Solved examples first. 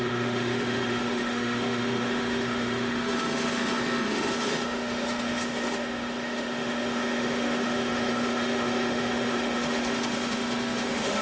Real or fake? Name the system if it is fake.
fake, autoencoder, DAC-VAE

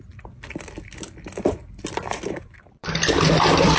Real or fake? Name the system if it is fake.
fake, vocoder, BigVGAN v2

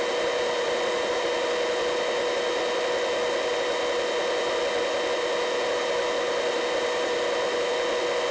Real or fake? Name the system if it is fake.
real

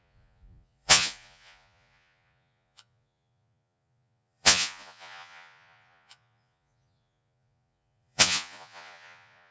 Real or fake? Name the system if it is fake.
fake, vocoder, Vocos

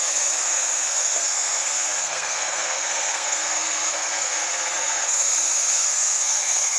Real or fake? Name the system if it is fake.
fake, codec, SNAC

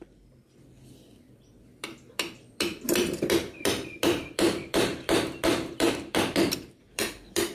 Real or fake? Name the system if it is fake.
fake, vocoder, BigVGAN v2